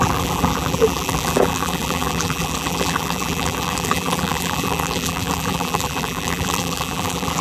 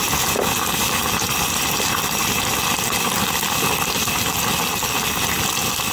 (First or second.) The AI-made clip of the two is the first